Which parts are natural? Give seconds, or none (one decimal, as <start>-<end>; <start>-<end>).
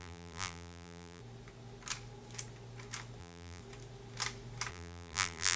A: 1.2-3.2; 3.6-4.7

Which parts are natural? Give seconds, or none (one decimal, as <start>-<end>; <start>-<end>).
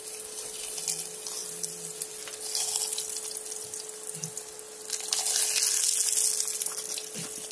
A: 0.0-7.5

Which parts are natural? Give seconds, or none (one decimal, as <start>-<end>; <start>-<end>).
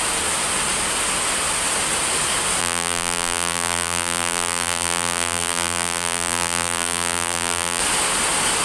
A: 0.0-2.6; 7.8-8.6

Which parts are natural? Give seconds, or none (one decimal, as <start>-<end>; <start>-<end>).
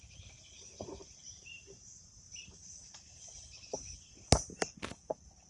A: 0.0-1.0; 4.1-5.5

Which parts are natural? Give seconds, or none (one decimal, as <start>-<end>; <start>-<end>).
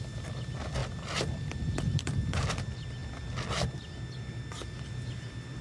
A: 0.0-0.8; 2.5-5.6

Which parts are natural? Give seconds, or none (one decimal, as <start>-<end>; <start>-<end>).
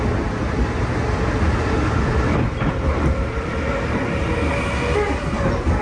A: 0.0-2.1; 4.3-5.8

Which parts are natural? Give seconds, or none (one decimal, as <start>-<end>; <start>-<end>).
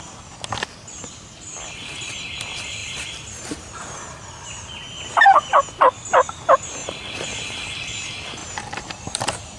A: 0.0-2.8; 4.1-8.4; 9.2-9.6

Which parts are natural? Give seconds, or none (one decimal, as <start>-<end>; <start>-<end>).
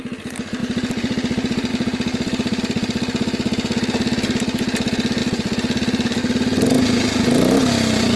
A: 0.0-0.6; 1.7-2.1; 2.6-5.2; 6.2-8.2